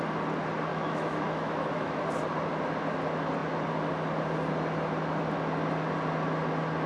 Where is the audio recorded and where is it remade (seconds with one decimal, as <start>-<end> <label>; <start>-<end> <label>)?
0.0-0.7 recorded; 0.7-2.0 remade; 2.0-6.9 recorded